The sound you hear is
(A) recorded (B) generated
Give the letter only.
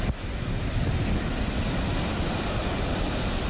A